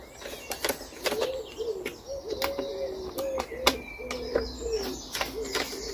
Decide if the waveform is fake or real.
real